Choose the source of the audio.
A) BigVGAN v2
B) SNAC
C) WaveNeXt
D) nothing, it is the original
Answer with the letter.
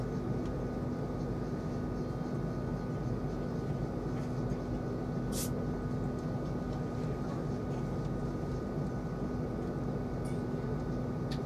D